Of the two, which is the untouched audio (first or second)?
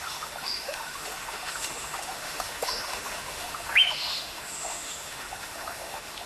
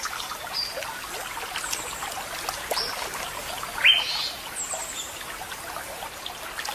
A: second